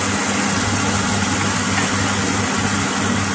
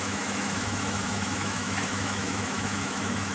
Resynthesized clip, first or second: second